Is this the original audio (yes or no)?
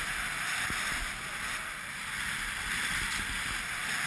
yes